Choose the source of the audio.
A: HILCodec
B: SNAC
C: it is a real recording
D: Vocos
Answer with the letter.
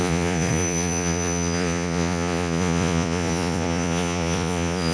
D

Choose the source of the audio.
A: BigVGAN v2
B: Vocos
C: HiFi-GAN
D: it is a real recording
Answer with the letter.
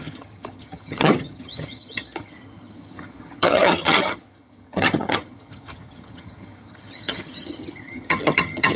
C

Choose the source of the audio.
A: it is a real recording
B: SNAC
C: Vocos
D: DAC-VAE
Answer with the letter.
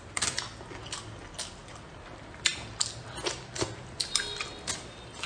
A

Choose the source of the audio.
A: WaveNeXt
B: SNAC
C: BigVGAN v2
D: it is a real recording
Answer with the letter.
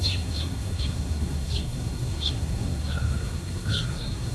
B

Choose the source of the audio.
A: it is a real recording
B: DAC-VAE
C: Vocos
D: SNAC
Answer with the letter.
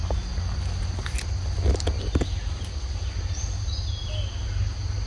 A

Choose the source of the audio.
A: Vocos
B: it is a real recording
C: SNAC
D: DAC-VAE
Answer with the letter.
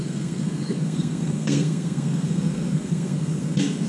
C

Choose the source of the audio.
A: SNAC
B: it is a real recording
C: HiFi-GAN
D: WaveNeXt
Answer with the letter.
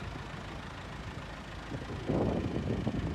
B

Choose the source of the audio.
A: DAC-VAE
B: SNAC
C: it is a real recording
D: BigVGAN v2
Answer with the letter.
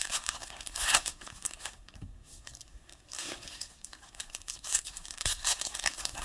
B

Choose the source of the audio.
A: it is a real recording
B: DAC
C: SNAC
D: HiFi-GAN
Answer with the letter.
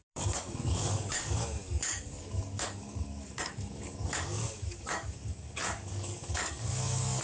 B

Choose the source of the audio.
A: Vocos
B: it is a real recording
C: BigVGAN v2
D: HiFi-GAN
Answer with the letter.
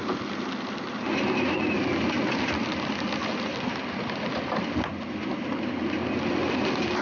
B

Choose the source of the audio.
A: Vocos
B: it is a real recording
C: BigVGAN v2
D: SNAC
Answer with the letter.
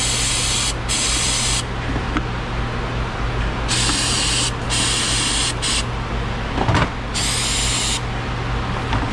B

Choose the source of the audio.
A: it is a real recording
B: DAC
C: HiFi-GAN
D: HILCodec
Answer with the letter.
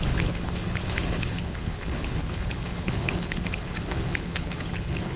D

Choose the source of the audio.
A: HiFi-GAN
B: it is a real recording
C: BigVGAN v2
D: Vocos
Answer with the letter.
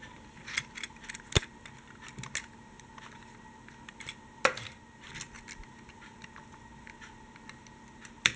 B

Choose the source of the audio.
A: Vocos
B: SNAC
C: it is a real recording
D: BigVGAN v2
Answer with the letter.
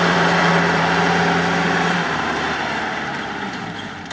D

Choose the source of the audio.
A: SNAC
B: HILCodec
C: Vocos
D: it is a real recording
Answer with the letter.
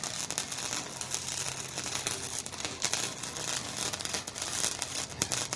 D